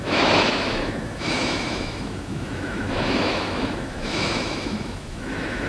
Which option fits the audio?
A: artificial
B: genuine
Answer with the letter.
A